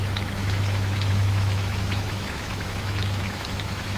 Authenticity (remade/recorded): remade